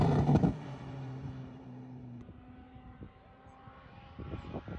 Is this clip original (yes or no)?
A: no